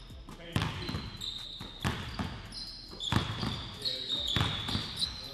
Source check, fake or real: real